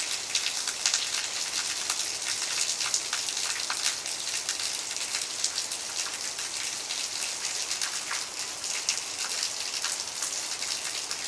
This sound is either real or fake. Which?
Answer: real